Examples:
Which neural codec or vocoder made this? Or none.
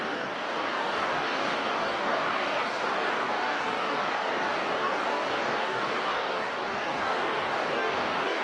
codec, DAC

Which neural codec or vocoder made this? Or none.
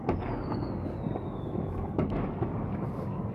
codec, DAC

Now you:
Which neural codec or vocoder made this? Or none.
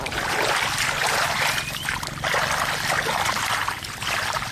none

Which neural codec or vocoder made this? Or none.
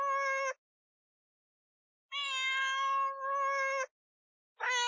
none